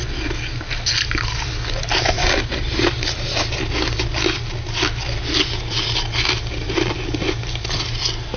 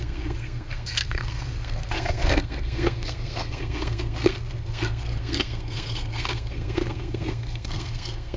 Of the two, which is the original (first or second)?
first